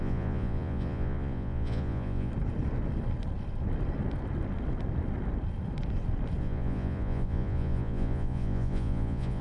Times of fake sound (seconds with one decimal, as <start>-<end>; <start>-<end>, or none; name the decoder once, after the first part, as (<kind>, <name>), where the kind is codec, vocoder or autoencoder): 0.0-2.3 (vocoder, Vocos); 6.4-9.4